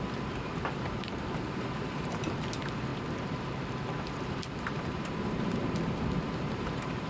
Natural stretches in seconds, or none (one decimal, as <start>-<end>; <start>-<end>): 2.9-4.1